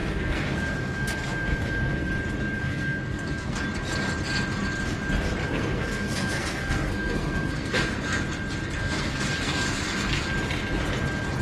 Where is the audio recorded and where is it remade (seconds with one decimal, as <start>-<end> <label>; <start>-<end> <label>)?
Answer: 0.0-2.1 remade; 2.1-2.6 recorded; 2.6-3.6 remade; 3.6-5.4 recorded; 5.4-8.2 remade; 8.2-8.8 recorded; 8.8-10.2 remade; 10.2-11.4 recorded